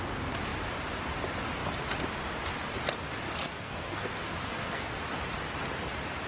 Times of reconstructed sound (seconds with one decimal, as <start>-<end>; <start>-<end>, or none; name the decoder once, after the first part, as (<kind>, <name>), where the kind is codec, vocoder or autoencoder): 3.4-4.9 (codec, SNAC)